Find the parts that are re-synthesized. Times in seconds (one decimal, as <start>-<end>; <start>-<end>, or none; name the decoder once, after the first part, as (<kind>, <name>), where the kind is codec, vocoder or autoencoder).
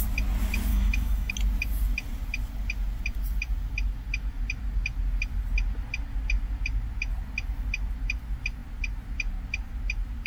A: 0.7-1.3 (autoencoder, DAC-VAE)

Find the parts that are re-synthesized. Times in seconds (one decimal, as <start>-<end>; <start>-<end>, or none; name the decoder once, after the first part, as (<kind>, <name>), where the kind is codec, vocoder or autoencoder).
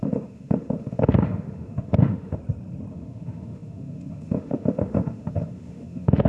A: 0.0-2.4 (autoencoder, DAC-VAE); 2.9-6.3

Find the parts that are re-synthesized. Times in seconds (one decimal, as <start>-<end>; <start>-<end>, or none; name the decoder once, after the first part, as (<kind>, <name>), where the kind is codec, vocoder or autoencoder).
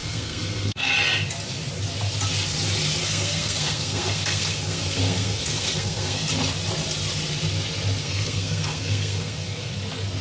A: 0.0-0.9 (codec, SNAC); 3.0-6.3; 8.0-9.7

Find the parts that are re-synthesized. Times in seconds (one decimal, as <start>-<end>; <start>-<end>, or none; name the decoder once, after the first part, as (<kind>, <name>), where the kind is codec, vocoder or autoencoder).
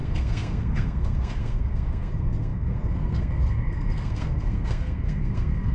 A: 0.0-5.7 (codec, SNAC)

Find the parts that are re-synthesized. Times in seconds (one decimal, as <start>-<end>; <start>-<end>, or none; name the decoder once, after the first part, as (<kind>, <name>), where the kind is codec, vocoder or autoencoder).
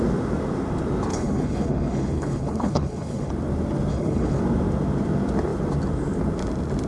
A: 1.1-3.3 (codec, HILCodec); 3.9-4.4